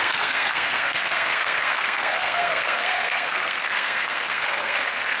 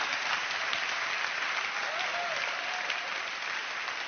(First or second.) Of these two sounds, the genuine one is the second